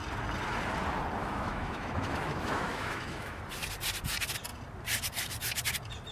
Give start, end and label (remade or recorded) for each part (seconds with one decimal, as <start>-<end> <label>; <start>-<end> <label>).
0.0-1.2 recorded; 1.2-3.4 remade; 3.4-6.1 recorded